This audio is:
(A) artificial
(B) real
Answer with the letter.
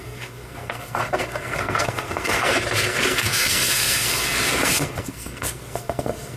A